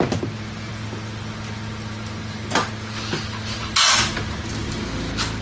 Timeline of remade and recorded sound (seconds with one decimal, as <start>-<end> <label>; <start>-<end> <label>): 0.0-5.4 recorded